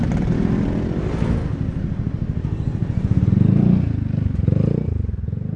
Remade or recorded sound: recorded